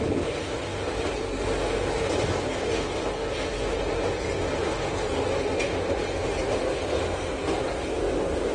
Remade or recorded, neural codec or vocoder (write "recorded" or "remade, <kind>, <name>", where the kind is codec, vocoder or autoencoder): recorded